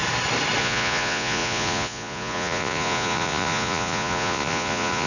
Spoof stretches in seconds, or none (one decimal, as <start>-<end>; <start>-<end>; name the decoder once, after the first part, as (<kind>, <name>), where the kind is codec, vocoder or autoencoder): 0.6-5.1 (vocoder, Vocos)